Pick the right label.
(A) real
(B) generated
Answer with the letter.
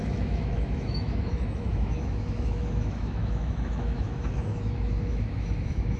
B